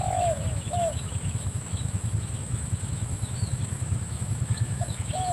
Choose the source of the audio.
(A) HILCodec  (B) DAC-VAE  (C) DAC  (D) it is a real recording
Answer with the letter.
B